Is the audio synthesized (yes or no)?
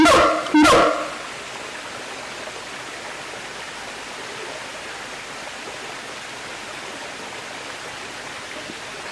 no